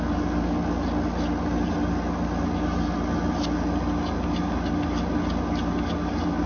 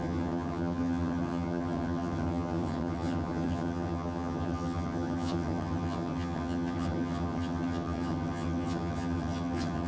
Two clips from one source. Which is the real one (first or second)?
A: first